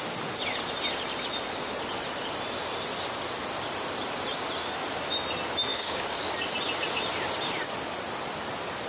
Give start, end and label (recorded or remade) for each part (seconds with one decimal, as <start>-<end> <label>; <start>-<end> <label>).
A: 0.0-5.7 recorded; 5.7-6.2 remade; 6.2-8.9 recorded